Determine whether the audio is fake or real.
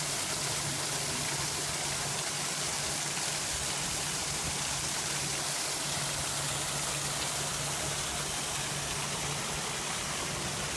real